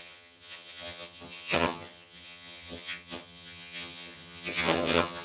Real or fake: fake